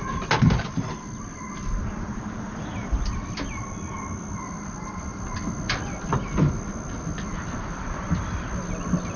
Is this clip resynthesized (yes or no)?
no